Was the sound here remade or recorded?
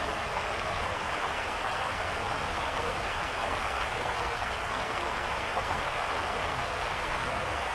remade